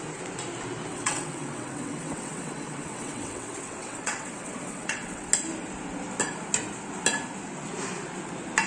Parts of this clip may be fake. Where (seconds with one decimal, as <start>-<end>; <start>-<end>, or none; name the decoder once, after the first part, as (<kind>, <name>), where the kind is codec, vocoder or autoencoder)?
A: 0.9-5.3 (vocoder, WaveNeXt)

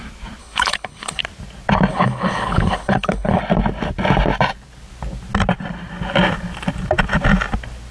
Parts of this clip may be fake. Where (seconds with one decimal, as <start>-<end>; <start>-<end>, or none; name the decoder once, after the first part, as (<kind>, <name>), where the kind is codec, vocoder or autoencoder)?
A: 0.4-1.2 (codec, HILCodec); 1.9-3.4

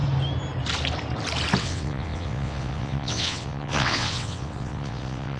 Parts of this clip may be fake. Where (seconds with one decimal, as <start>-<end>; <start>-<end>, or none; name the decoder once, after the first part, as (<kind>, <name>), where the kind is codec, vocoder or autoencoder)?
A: 1.6-5.4 (vocoder, WaveNeXt)

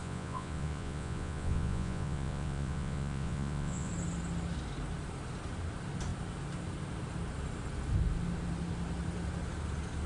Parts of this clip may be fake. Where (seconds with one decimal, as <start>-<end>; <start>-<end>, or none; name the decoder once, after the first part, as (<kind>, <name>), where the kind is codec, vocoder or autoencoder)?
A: 0.0-3.9 (vocoder, Vocos)

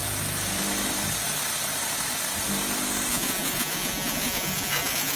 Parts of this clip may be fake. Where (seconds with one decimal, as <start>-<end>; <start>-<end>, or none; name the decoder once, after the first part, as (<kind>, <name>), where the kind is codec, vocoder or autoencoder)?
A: 3.1-5.2 (vocoder, Vocos)

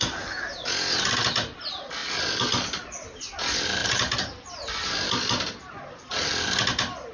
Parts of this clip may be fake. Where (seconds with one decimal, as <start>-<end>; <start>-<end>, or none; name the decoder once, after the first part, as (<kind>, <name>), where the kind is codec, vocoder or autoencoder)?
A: none